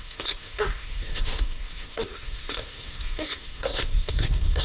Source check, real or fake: fake